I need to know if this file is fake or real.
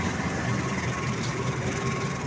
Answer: fake